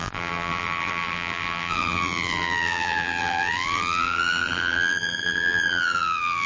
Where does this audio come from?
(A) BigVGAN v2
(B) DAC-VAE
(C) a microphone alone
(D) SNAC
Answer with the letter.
A